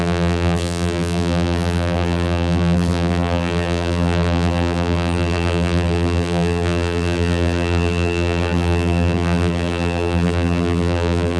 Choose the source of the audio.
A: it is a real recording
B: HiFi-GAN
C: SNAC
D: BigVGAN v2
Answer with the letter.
D